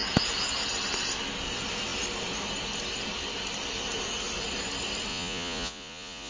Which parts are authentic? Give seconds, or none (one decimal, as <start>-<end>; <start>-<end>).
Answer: 0.0-5.1